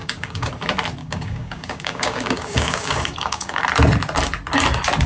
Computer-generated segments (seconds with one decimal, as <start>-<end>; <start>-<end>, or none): 0.0-0.5; 1.0-3.6